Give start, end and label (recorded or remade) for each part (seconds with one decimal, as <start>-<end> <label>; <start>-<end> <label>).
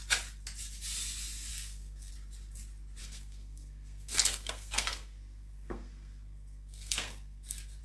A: 0.0-1.5 recorded; 1.5-2.1 remade; 2.1-3.0 recorded; 3.0-7.8 remade